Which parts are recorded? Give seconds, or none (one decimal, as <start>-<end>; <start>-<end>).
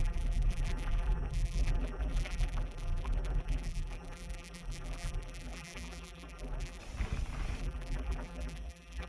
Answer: 6.8-7.6